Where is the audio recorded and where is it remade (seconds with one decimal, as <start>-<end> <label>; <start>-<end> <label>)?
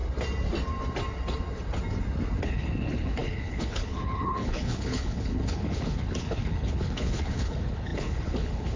0.0-2.4 recorded; 2.4-8.8 remade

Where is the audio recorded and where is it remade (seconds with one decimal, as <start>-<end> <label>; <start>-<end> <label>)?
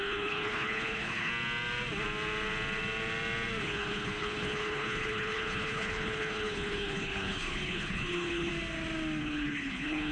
0.0-1.3 remade; 1.3-3.6 recorded; 3.6-8.5 remade; 8.5-9.2 recorded; 9.2-10.1 remade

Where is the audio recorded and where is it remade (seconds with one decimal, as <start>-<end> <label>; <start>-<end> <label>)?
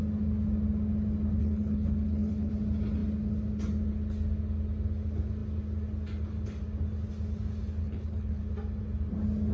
0.0-1.4 recorded; 1.4-2.5 remade; 2.5-7.8 recorded; 7.8-8.4 remade; 8.4-9.5 recorded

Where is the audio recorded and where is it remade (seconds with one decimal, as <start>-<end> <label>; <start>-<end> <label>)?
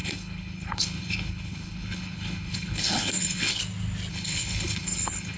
0.0-3.6 remade; 3.6-4.1 recorded; 4.1-5.4 remade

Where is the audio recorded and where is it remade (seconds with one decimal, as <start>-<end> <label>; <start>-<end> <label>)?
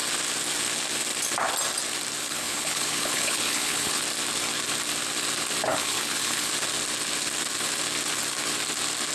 0.0-2.2 recorded; 2.2-4.0 remade; 4.0-5.7 recorded; 5.7-6.5 remade; 6.5-9.1 recorded